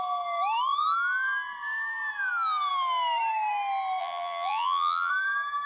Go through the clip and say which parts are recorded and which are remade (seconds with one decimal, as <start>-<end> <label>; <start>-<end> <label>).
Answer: 0.0-4.0 recorded; 4.0-5.1 remade; 5.1-5.7 recorded